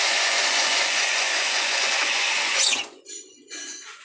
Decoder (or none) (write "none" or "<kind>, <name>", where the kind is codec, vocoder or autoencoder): vocoder, Vocos